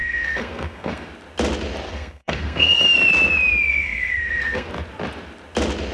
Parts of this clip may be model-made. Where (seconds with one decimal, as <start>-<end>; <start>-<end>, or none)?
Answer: 0.0-1.1; 1.9-2.8; 3.7-4.7